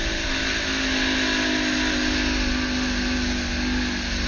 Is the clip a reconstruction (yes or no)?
no